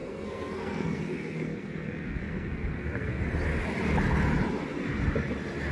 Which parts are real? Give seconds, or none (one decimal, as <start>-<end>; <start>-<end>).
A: 3.2-5.7